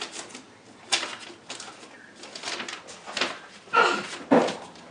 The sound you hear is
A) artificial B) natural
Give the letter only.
B